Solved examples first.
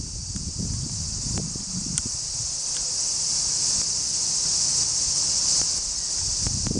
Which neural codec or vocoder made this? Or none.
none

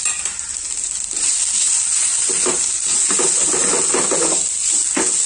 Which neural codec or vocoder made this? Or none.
none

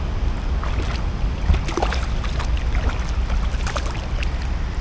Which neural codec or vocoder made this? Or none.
none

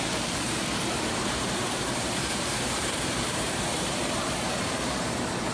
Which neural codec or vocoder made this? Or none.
vocoder, BigVGAN v2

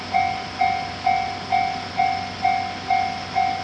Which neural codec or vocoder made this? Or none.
none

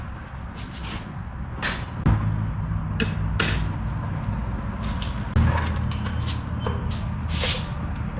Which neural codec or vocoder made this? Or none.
none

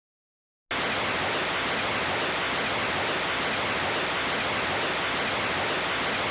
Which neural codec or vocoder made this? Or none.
none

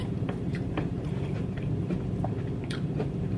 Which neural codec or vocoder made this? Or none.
vocoder, BigVGAN v2